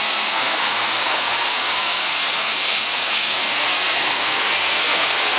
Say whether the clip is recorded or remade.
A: remade